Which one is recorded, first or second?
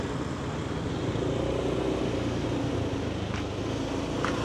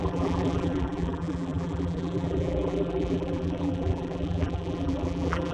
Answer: first